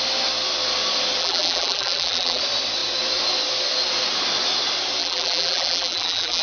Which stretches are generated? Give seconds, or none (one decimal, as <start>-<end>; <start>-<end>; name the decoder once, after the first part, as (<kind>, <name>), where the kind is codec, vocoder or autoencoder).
1.2-2.4 (vocoder, BigVGAN v2); 5.0-6.4